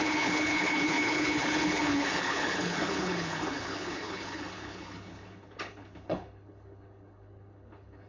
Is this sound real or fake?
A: fake